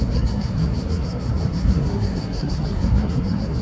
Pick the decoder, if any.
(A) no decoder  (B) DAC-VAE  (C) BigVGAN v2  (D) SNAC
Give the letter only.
D